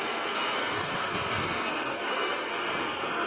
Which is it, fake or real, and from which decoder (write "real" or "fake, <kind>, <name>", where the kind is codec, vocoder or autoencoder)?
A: fake, codec, SNAC